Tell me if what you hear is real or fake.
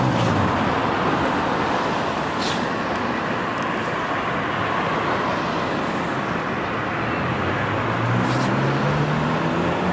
real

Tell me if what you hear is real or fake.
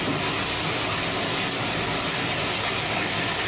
real